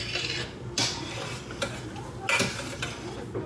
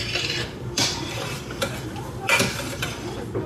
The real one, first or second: first